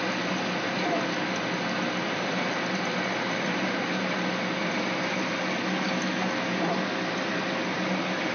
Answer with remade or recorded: recorded